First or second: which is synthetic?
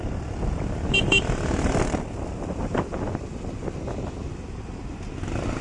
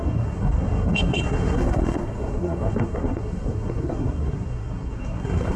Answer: second